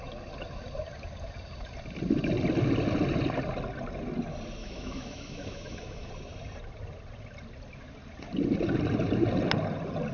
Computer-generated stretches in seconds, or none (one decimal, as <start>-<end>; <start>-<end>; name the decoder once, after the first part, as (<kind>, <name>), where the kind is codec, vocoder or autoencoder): 4.6-6.1 (autoencoder, DAC-VAE)